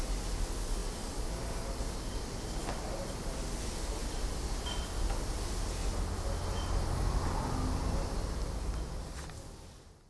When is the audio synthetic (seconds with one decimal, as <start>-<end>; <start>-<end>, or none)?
none